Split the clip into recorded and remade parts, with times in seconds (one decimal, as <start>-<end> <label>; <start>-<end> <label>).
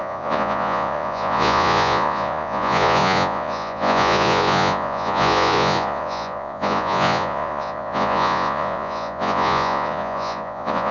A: 0.0-10.9 remade